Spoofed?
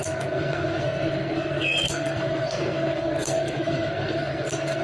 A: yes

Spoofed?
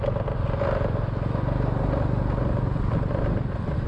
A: no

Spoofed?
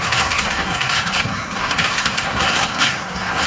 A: yes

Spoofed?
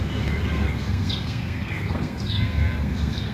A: yes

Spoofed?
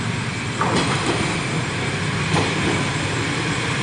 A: no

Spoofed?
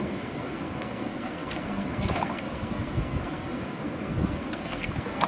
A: yes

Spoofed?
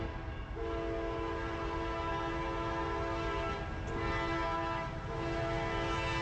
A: no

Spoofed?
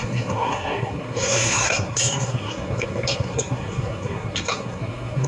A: yes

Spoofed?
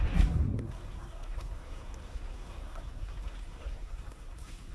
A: yes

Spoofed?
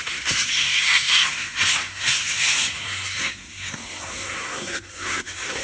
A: yes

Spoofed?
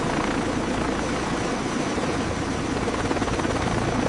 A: no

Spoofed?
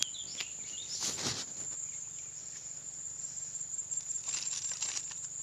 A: no